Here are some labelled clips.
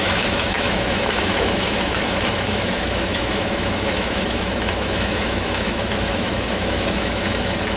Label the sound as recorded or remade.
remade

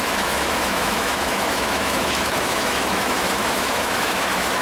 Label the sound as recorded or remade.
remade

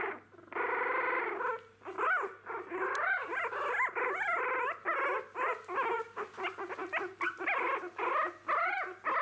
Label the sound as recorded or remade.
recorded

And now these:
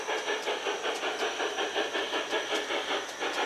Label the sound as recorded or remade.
recorded